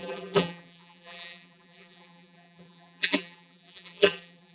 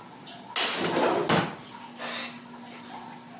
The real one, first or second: second